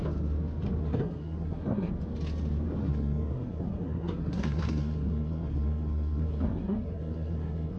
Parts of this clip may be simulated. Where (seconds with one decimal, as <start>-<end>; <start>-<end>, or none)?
0.8-1.9; 2.8-7.8